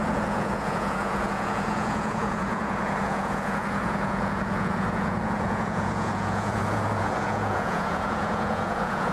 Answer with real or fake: fake